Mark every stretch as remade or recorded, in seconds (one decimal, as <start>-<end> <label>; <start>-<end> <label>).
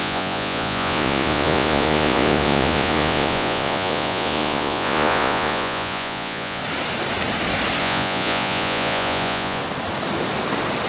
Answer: 0.0-6.6 remade; 6.6-7.8 recorded; 7.8-9.6 remade; 9.6-10.9 recorded